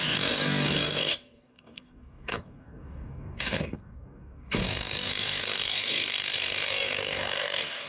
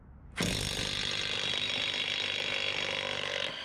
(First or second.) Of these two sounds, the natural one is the second